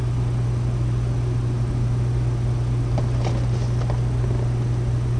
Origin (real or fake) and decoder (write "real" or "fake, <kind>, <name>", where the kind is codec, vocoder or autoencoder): real